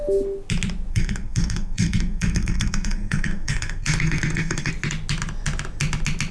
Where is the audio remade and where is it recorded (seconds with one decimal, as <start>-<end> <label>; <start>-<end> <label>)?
0.0-0.9 recorded; 0.9-4.7 remade; 4.7-6.3 recorded